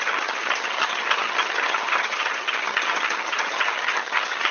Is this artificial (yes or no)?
yes